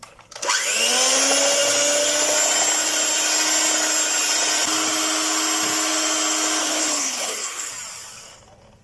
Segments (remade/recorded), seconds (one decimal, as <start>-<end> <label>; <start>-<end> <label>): 0.0-6.6 recorded; 6.6-7.7 remade; 7.7-8.8 recorded